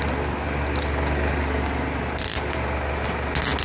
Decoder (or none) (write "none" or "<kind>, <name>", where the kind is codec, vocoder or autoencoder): none